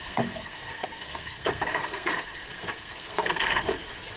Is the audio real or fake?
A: fake